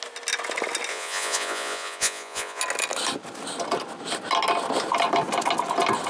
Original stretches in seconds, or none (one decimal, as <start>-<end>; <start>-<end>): 0.0-0.9; 2.6-6.1